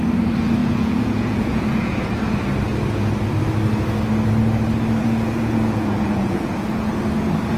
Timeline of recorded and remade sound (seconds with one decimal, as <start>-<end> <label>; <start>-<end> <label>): 0.0-0.6 recorded; 0.6-2.0 remade; 2.0-5.0 recorded; 5.0-6.9 remade; 6.9-7.6 recorded

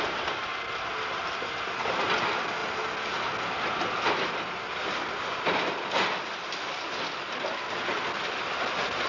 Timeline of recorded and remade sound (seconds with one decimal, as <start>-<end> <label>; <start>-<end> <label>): 0.0-9.1 recorded